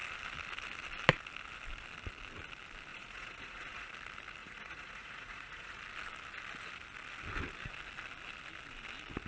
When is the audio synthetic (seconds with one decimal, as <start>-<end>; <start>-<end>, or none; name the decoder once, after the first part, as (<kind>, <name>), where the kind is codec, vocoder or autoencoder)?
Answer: 2.9-3.9 (vocoder, Vocos); 4.4-5.8